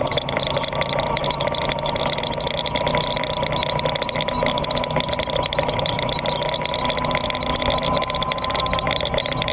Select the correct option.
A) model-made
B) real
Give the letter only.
B